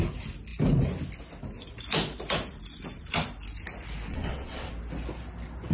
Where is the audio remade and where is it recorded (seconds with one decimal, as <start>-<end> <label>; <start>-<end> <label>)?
0.0-4.1 recorded; 4.1-4.7 remade; 4.7-5.7 recorded